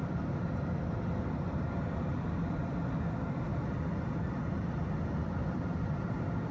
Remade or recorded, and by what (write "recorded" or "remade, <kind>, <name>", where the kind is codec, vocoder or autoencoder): recorded